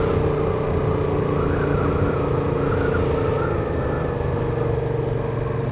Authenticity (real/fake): real